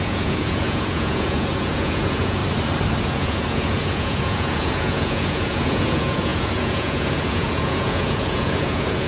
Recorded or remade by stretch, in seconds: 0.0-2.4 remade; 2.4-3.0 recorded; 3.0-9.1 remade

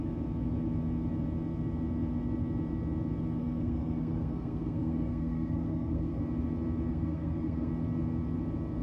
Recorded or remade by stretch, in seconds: 0.0-3.4 recorded; 3.4-6.2 remade; 6.2-6.9 recorded; 6.9-7.7 remade; 7.7-8.8 recorded

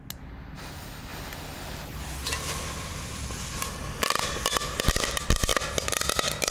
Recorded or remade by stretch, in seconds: 0.0-6.5 recorded

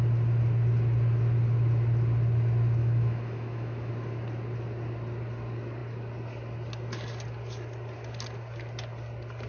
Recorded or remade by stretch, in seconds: 0.0-2.8 recorded; 2.8-3.9 remade; 3.9-9.5 recorded

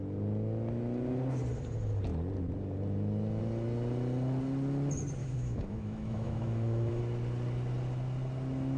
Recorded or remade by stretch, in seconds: 0.0-5.2 recorded; 5.2-7.0 remade; 7.0-8.8 recorded

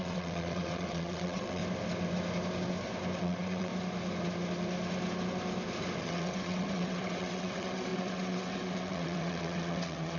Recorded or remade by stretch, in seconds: 0.0-1.6 remade; 1.6-3.2 recorded; 3.2-3.7 remade; 3.7-6.0 recorded; 6.0-10.2 remade

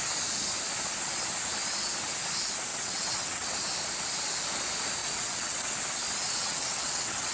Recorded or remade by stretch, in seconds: 0.0-2.7 recorded; 2.7-3.5 remade; 3.5-5.0 recorded; 5.0-5.7 remade; 5.7-6.4 recorded; 6.4-7.3 remade

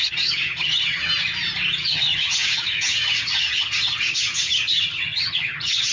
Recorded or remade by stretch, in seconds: 0.0-1.1 remade; 1.1-1.9 recorded; 1.9-5.9 remade